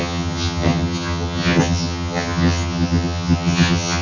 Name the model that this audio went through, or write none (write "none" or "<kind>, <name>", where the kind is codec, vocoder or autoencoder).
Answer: vocoder, HiFi-GAN